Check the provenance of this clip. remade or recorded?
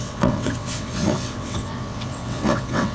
remade